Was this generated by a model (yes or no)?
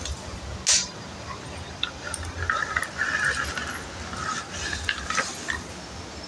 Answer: no